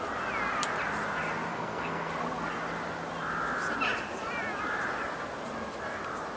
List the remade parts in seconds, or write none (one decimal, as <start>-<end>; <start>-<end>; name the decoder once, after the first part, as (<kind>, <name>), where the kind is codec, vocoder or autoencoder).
1.5-2.1 (codec, SNAC)